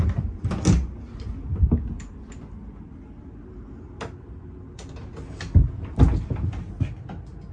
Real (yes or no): yes